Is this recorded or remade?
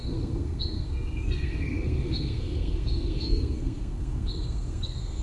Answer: remade